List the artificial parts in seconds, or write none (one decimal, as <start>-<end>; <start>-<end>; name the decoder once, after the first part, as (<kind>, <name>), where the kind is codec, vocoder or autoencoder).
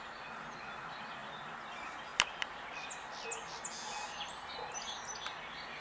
none